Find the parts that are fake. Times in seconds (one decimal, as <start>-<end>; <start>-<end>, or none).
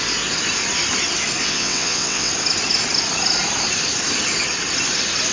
1.4-2.3